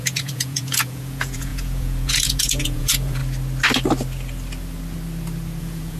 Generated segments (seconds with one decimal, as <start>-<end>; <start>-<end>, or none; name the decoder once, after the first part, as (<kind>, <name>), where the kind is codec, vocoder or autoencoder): 0.0-3.2 (vocoder, Vocos); 5.6-6.0